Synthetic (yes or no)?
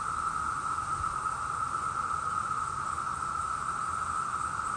no